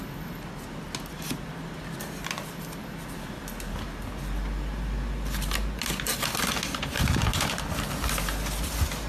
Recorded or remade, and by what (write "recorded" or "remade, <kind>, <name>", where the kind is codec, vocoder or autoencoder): recorded